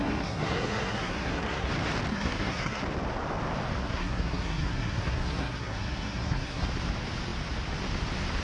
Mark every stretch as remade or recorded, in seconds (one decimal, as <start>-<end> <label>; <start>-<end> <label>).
0.0-1.7 remade; 1.7-2.1 recorded; 2.1-2.8 remade; 2.8-3.8 recorded; 3.8-6.7 remade; 6.7-8.4 recorded